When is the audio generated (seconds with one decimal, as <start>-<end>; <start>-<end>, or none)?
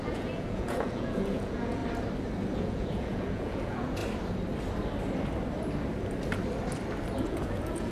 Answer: 0.0-1.8; 2.6-4.0; 7.2-7.9